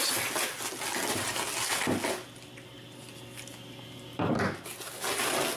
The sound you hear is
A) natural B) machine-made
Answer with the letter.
A